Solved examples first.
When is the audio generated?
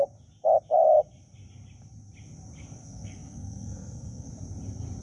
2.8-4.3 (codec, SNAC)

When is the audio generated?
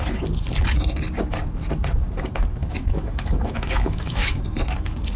2.6-4.4 (autoencoder, DAC-VAE)